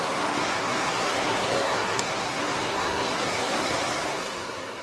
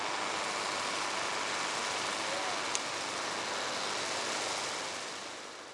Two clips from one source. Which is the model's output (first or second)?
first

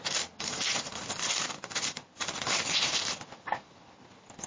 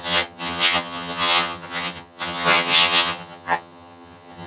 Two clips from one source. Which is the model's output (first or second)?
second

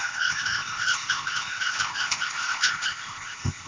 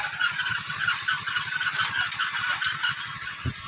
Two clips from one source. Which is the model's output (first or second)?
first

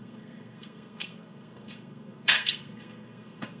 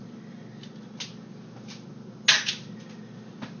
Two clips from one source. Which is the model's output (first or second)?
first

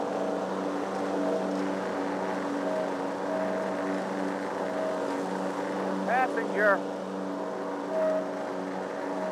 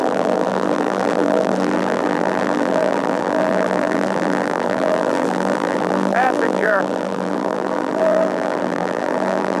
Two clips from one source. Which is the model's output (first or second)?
second